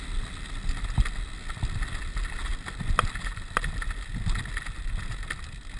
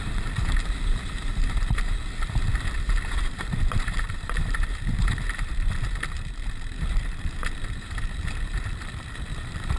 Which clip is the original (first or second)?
first